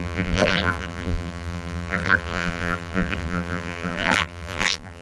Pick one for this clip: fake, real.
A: fake